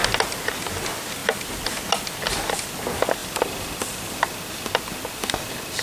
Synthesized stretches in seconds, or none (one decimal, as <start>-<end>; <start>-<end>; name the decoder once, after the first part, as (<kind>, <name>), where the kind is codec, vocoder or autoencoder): 3.2-3.8 (vocoder, BigVGAN v2)